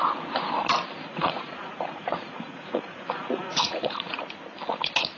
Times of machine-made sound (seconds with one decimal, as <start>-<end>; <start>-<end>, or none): 1.1-4.2